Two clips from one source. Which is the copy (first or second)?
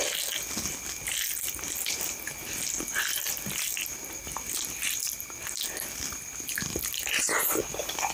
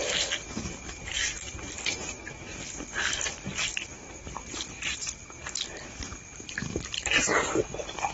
second